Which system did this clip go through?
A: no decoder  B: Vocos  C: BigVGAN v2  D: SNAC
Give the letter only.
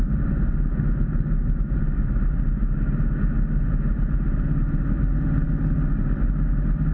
A